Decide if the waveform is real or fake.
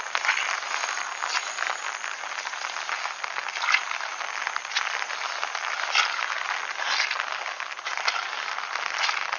real